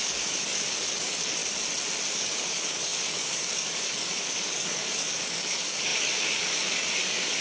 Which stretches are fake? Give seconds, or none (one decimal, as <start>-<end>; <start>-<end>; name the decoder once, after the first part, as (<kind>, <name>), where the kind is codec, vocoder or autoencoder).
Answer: 0.0-1.4 (codec, DAC); 2.1-7.4